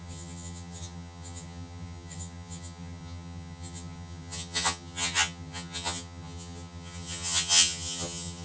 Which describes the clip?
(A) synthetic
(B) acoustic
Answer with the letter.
A